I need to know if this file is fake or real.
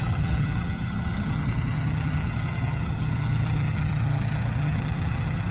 fake